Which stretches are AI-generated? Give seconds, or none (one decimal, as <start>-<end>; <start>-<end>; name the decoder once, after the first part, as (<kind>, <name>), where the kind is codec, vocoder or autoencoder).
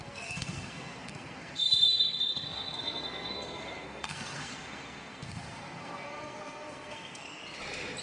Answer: 0.0-7.4 (codec, SNAC)